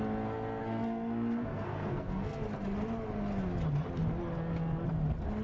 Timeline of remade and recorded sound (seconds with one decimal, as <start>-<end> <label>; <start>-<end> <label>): 0.0-0.6 recorded; 0.6-2.4 remade; 2.4-5.4 recorded